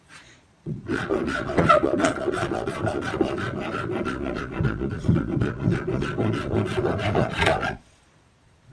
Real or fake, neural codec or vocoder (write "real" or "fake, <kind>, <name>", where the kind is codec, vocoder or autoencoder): fake, vocoder, Vocos